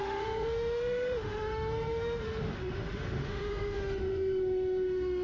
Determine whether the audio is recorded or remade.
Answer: remade